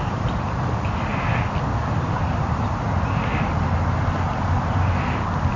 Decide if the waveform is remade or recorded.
recorded